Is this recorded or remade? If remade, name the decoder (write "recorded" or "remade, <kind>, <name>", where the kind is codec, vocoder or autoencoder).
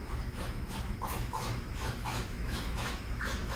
remade, autoencoder, DAC-VAE